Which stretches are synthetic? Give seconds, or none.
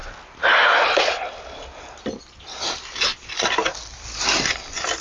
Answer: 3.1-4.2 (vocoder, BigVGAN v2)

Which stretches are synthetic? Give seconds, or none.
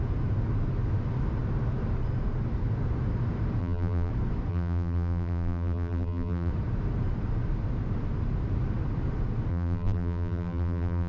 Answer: 3.6-4.1 (vocoder, BigVGAN v2); 4.5-6.5; 9.5-11.1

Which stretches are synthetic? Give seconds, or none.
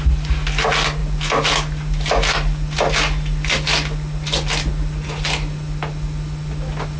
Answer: none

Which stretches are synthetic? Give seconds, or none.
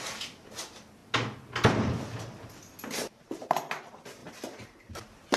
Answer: 4.2-4.9 (vocoder, BigVGAN v2)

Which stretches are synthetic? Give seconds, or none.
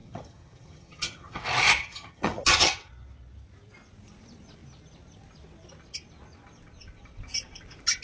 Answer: 0.0-1.4 (vocoder, HiFi-GAN); 1.8-2.9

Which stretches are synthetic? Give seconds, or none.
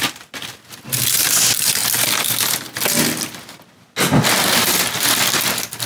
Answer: none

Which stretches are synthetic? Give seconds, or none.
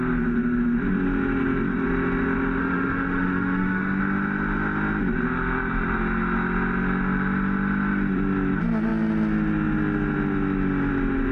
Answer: 2.6-4.0 (autoencoder, DAC-VAE)